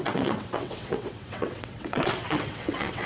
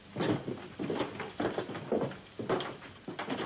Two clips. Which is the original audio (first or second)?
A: second